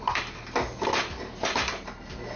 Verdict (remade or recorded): recorded